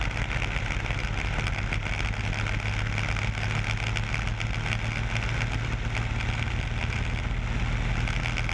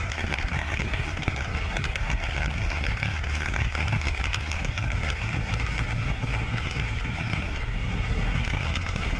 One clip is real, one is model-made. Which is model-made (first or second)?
second